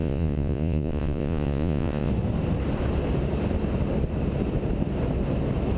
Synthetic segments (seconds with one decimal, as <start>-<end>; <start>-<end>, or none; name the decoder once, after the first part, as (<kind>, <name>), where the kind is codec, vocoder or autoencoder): 0.0-2.1 (vocoder, Vocos)